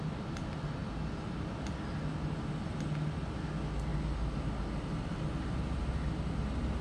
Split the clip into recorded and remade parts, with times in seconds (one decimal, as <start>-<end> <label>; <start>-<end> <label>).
0.0-6.8 recorded